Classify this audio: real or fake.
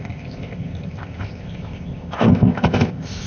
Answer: fake